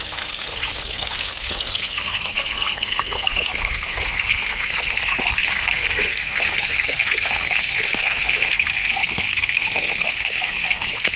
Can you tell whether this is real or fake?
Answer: fake